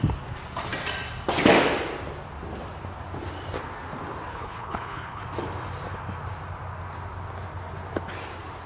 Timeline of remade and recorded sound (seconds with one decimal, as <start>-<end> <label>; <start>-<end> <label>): 0.0-4.3 recorded; 4.3-5.2 remade; 5.2-8.7 recorded